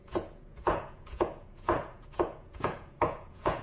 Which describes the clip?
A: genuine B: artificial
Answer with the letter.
B